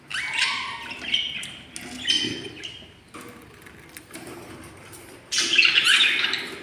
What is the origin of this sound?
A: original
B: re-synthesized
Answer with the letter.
A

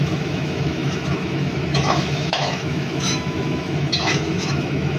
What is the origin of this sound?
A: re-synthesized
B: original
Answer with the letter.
A